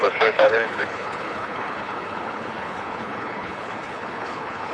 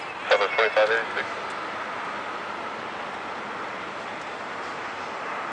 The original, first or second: second